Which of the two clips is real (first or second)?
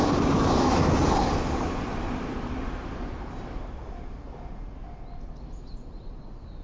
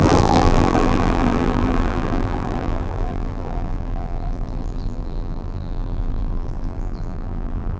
first